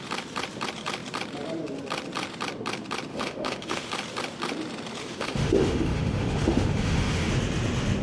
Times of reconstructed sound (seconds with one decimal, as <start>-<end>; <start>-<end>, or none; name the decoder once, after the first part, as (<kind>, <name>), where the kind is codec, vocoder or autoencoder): 3.1-3.9 (autoencoder, DAC-VAE); 5.0-7.3